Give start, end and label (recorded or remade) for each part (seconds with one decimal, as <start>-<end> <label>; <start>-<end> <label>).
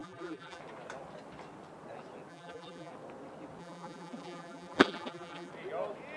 0.0-0.6 remade; 0.6-2.3 recorded; 2.3-2.9 remade; 2.9-3.6 recorded; 3.6-5.5 remade; 5.5-6.2 recorded